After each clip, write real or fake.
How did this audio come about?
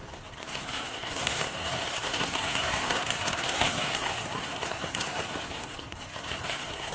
fake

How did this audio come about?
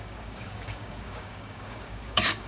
fake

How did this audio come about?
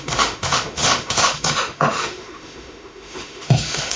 fake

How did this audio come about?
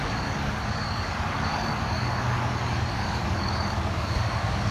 fake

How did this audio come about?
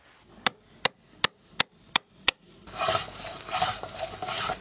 real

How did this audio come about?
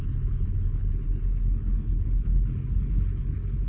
fake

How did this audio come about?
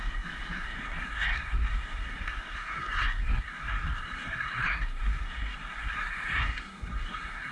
fake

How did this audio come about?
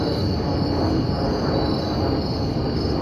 real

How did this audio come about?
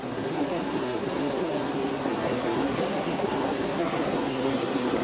fake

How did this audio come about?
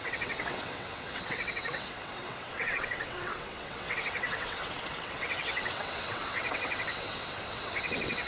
fake